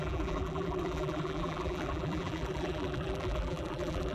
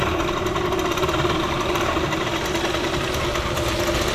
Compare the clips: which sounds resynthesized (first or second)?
first